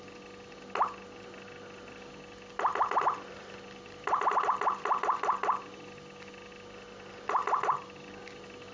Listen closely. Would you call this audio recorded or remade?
recorded